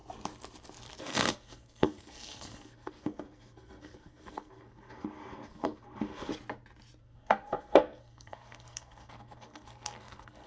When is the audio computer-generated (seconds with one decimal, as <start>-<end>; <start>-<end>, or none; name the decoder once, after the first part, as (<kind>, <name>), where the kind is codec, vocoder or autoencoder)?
1.0-6.3 (codec, SNAC); 7.0-10.5

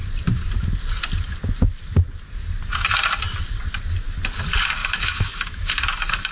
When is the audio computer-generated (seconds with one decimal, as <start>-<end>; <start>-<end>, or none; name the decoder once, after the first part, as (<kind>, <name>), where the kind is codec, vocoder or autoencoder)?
4.8-5.7 (autoencoder, DAC-VAE)

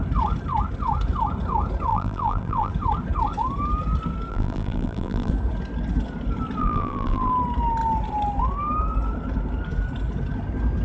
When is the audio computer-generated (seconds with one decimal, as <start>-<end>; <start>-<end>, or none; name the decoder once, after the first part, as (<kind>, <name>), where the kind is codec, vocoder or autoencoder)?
1.9-2.7 (vocoder, BigVGAN v2); 4.3-5.3; 6.6-7.3

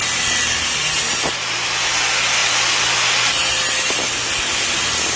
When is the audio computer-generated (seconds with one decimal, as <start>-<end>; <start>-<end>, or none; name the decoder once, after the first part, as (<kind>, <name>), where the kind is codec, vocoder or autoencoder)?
none

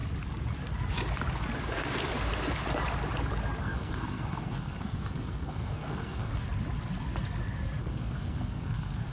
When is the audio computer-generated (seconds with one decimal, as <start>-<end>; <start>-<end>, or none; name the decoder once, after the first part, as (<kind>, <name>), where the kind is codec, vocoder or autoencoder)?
3.6-6.3 (codec, SNAC); 7.8-9.1

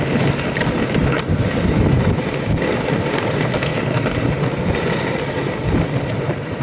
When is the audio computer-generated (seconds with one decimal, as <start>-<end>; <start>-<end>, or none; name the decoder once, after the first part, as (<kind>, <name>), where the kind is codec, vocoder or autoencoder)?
0.0-6.6 (vocoder, BigVGAN v2)

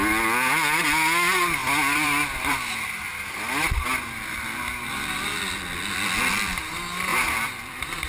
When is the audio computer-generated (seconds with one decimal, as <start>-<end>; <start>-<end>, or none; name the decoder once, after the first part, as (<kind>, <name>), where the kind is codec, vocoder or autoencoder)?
1.6-2.7 (vocoder, BigVGAN v2); 7.1-8.1

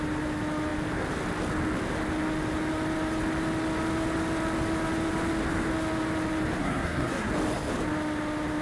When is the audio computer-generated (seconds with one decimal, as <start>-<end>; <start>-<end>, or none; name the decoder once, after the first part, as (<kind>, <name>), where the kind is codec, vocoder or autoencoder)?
6.6-7.3 (codec, SNAC)